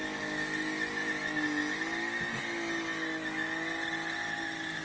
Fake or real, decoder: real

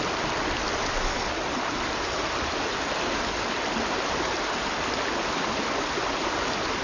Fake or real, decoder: real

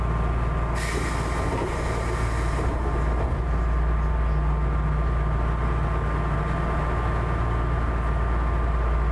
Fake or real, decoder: real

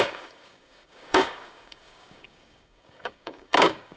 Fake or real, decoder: fake, codec, DAC